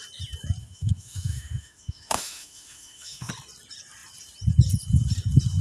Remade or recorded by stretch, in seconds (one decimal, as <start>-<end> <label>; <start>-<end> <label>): 0.0-0.6 recorded; 0.6-3.3 remade; 3.3-5.6 recorded